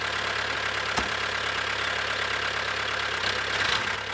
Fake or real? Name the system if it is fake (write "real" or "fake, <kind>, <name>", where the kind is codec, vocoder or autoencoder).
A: real